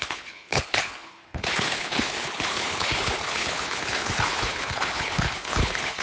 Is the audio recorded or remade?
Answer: remade